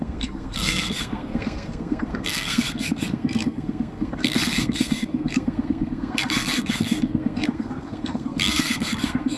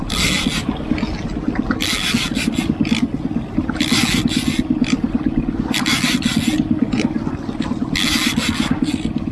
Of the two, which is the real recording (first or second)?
second